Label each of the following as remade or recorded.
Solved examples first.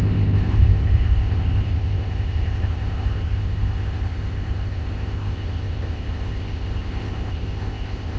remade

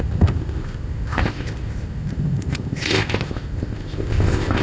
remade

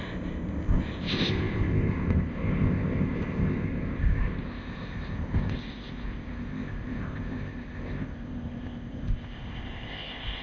remade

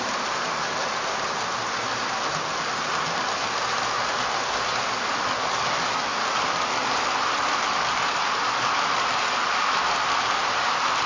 recorded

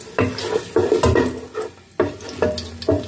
recorded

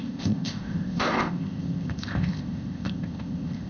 remade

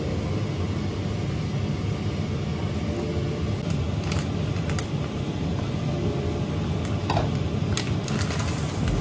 recorded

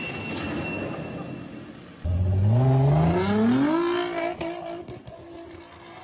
recorded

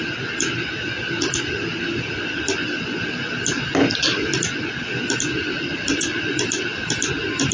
recorded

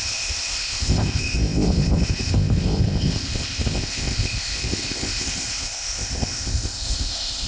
remade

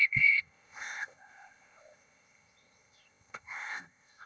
remade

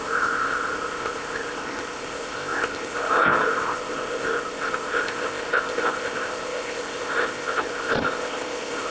remade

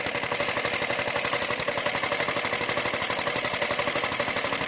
recorded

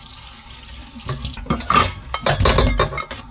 recorded